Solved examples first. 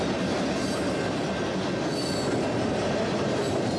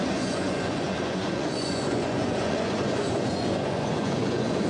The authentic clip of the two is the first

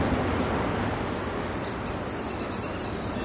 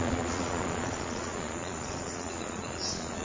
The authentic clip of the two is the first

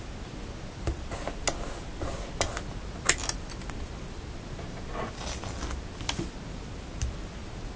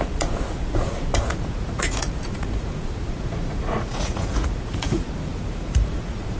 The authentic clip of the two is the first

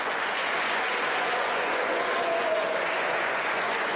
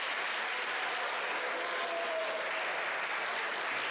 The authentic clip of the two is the second